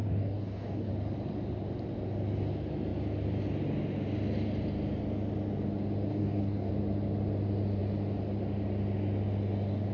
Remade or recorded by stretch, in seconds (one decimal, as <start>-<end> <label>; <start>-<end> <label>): 0.0-0.9 remade; 0.9-6.1 recorded; 6.1-6.7 remade; 6.7-9.9 recorded

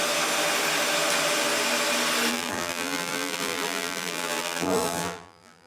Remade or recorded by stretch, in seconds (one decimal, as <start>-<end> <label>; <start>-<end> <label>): 0.0-2.3 recorded; 2.3-5.7 remade

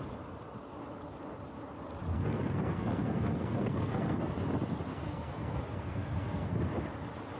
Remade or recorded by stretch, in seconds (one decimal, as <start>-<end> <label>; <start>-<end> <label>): 0.0-2.1 recorded; 2.1-4.3 remade; 4.3-4.9 recorded; 4.9-6.7 remade; 6.7-7.4 recorded